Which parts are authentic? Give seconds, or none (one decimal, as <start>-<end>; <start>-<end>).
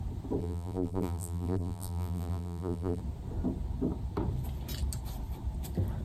0.0-0.4; 3.0-6.0